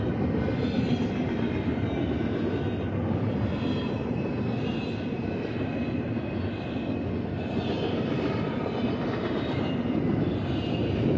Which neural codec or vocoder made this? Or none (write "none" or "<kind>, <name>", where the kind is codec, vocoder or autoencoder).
none